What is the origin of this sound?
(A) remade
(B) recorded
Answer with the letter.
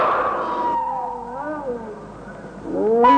B